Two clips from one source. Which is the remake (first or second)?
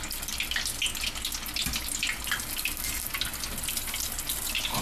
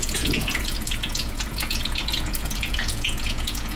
second